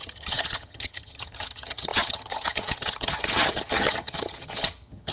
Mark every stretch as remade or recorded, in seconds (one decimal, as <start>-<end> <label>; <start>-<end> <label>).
0.0-5.1 remade